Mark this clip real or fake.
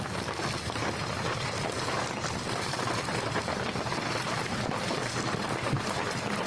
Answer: real